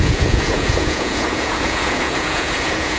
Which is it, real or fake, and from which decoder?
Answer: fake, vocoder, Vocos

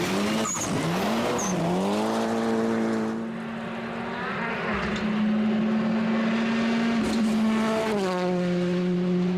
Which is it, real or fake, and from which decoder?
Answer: real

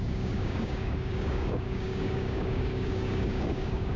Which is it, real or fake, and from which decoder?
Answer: fake, codec, DAC